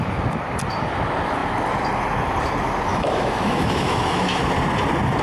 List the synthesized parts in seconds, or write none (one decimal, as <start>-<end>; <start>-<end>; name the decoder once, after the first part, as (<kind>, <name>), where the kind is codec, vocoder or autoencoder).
2.9-4.4 (autoencoder, DAC-VAE)